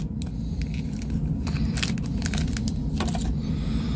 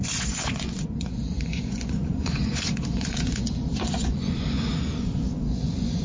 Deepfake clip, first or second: second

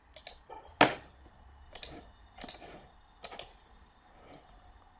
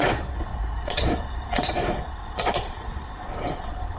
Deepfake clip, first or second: second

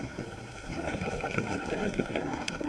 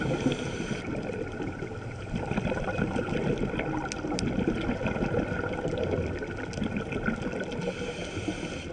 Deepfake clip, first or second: first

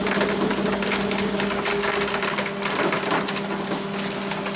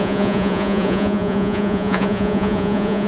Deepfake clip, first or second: second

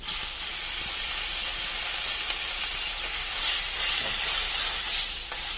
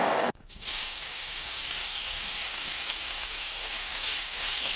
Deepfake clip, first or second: second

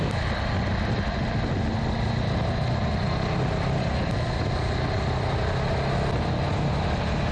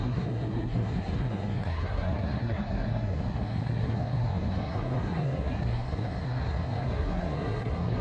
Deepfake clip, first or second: second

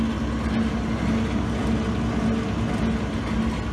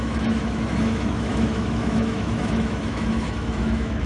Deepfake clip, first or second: second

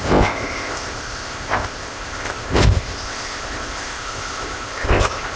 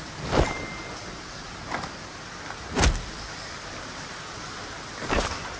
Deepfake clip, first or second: first